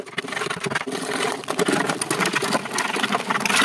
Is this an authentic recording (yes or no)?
yes